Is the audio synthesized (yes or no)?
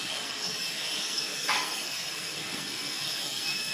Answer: yes